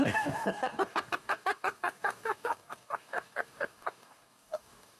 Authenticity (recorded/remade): remade